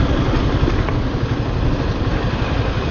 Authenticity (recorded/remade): recorded